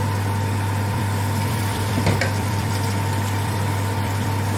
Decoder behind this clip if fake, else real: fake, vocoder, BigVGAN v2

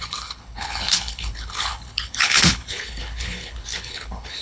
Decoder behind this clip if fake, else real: fake, codec, HILCodec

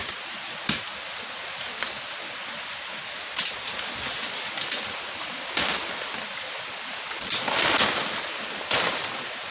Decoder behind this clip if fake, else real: real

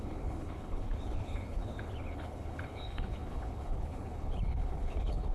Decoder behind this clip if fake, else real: fake, codec, HILCodec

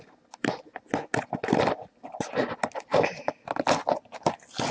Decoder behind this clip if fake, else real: real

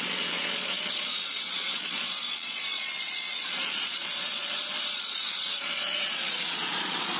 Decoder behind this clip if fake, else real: fake, vocoder, Vocos